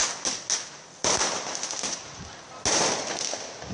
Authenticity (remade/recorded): recorded